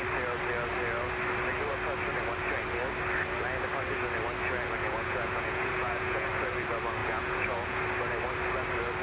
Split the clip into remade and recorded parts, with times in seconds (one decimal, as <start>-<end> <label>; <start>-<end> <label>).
0.0-4.8 recorded; 4.8-6.3 remade; 6.3-7.0 recorded; 7.0-7.8 remade; 7.8-9.0 recorded